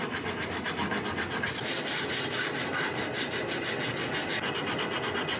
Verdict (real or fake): real